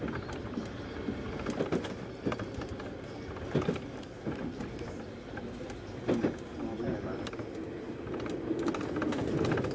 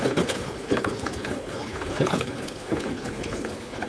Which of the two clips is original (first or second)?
first